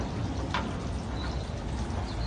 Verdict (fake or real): real